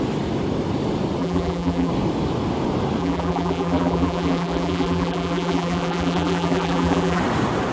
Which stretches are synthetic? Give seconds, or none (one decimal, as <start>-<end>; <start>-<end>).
1.2-1.9; 3.0-7.2